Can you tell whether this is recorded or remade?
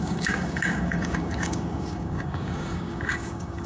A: remade